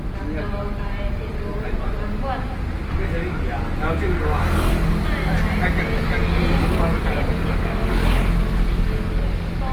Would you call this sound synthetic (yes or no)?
no